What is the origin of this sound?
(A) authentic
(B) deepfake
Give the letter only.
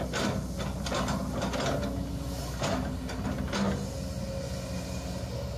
A